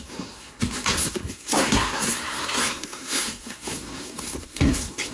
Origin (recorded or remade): remade